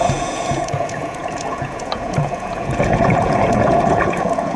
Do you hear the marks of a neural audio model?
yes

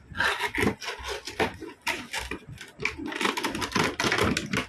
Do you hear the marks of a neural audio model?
no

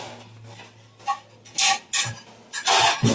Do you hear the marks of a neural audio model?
no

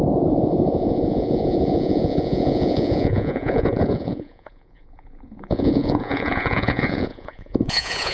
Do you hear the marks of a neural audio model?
yes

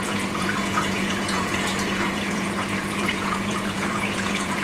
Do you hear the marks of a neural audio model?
yes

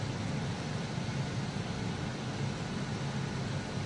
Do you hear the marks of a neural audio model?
no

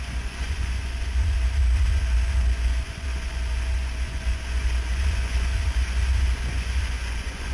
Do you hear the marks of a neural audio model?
yes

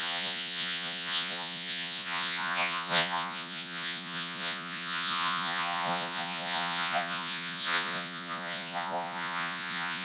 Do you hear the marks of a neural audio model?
yes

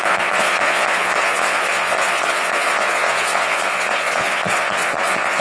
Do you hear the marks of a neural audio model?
yes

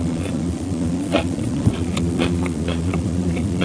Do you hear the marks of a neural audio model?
yes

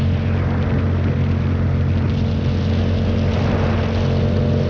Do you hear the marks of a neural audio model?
no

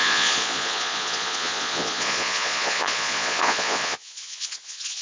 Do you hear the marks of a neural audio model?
yes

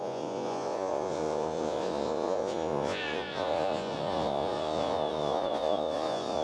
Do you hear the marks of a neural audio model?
yes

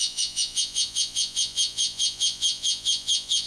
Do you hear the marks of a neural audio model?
yes